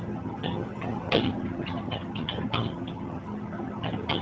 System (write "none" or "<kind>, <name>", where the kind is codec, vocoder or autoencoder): vocoder, HiFi-GAN